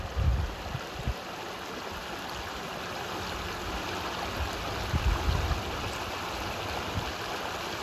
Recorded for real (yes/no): yes